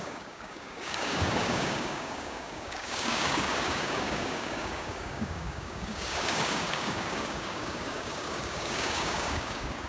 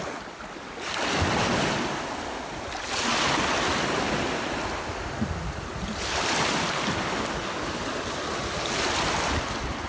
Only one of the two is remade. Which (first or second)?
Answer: first